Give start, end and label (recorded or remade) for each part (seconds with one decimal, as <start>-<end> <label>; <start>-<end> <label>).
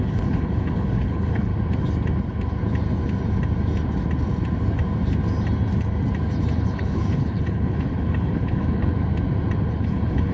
0.0-1.5 remade; 1.5-6.6 recorded; 6.6-8.9 remade; 8.9-9.7 recorded; 9.7-10.3 remade